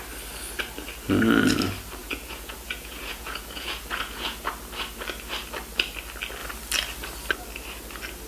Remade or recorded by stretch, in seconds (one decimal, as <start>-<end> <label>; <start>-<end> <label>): 0.0-2.0 recorded; 2.0-4.5 remade; 4.5-8.3 recorded